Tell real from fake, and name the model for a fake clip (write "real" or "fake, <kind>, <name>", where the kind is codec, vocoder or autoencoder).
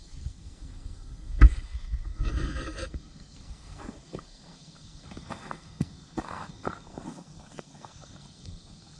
fake, codec, SNAC